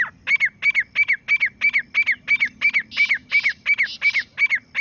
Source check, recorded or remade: recorded